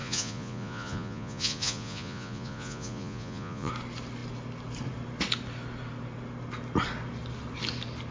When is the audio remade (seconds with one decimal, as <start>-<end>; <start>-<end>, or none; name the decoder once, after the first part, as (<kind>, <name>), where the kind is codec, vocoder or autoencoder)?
0.0-3.7 (vocoder, Vocos)